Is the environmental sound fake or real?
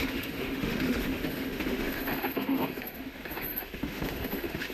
fake